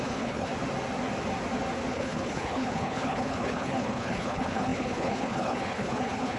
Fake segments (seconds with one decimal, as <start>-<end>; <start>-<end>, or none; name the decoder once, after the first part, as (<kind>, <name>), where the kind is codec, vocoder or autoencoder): 0.0-0.5 (codec, HILCodec); 1.9-6.4